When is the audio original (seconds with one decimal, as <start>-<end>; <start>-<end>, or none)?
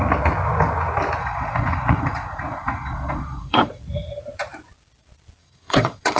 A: 0.0-1.2; 3.8-5.4